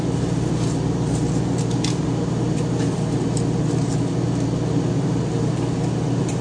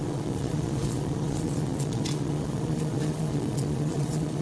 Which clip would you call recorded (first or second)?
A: first